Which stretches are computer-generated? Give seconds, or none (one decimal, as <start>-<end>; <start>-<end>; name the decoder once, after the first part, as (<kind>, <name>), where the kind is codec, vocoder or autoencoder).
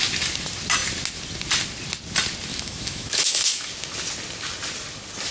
2.5-3.7 (autoencoder, DAC-VAE)